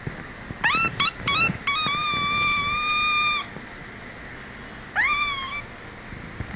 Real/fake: real